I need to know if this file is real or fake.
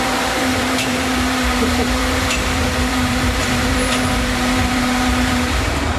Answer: fake